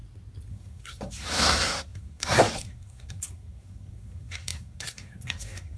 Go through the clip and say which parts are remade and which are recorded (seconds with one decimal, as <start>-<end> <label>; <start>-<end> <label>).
0.0-0.5 recorded; 0.5-5.8 remade